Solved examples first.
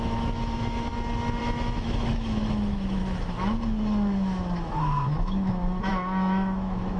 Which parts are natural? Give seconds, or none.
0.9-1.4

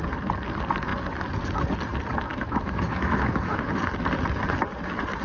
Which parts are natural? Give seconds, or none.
0.0-2.3; 3.8-5.2

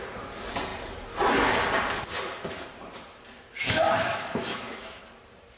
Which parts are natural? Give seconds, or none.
0.0-3.6; 5.0-5.6

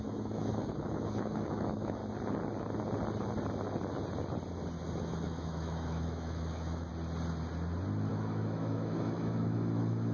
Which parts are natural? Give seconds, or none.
2.0-5.0; 6.9-8.1

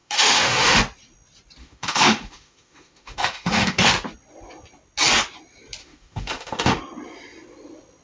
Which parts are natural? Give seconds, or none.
0.8-1.6; 3.9-5.8; 6.8-8.0

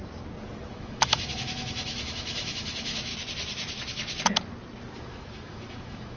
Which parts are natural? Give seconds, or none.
0.0-0.7; 3.1-5.0

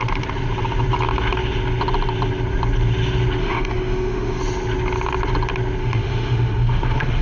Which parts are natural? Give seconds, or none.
0.0-3.4; 4.4-5.8